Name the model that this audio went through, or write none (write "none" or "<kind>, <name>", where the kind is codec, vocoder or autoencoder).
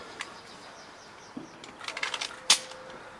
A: none